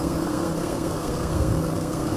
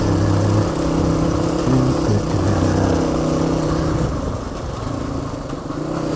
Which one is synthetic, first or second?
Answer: first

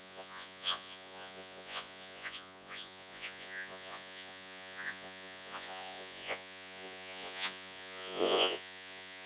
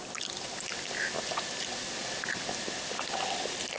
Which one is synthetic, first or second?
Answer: first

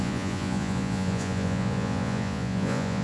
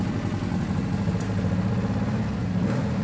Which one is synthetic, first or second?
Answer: first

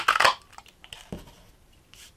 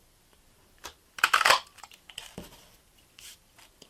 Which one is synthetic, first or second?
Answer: second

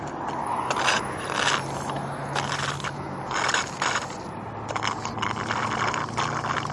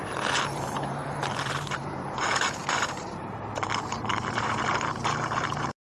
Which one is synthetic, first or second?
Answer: second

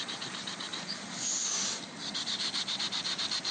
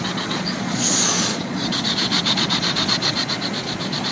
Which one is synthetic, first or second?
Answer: second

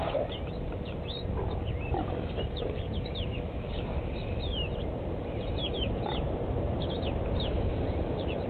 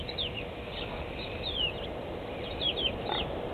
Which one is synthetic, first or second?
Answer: first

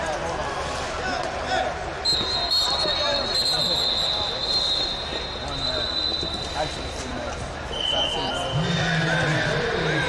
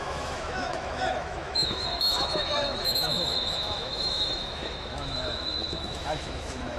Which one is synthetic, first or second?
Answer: second